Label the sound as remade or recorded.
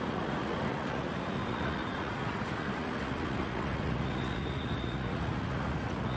remade